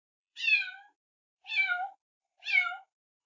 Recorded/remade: remade